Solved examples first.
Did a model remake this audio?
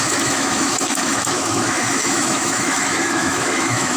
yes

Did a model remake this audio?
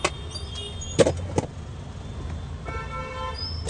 no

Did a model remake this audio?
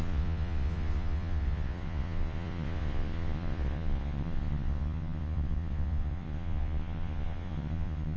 yes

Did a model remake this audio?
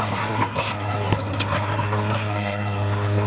yes